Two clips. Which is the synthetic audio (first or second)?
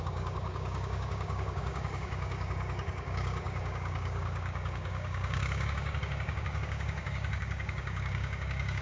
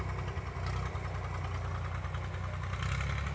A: first